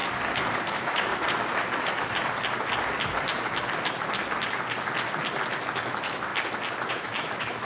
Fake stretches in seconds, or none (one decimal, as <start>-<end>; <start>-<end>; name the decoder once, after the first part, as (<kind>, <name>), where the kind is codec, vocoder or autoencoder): 0.7-1.1 (autoencoder, DAC-VAE); 5.7-6.3; 6.9-7.6